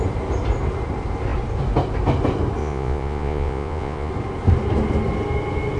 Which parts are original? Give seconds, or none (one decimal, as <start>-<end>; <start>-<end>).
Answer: 0.0-2.6; 4.1-5.8